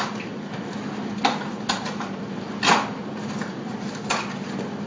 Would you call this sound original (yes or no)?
yes